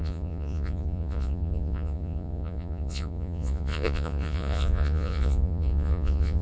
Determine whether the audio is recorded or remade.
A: remade